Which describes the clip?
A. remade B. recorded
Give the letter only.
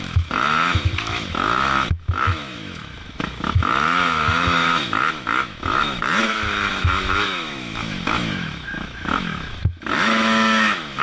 A